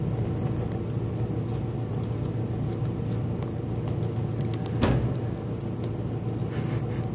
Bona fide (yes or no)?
yes